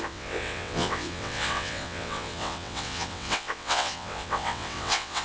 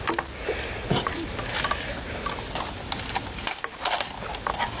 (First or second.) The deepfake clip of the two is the first